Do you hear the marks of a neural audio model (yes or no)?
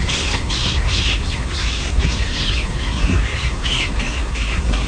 yes